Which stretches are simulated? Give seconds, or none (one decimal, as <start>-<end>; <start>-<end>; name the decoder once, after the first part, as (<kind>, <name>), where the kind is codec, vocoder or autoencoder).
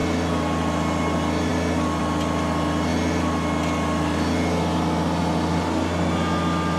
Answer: none